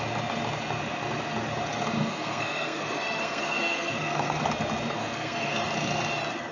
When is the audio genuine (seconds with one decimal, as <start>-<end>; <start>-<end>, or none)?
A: 0.0-2.0; 4.4-5.0; 5.6-6.5